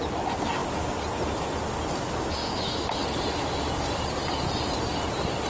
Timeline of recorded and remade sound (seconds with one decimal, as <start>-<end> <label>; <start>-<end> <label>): 0.0-2.4 recorded; 2.4-3.0 remade; 3.0-5.5 recorded